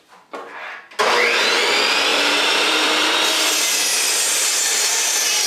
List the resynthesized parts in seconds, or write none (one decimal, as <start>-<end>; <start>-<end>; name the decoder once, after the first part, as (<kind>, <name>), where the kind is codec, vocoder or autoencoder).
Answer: 1.0-1.6 (vocoder, BigVGAN v2); 2.1-5.5